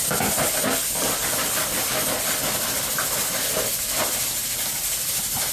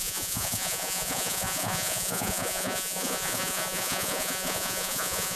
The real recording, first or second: first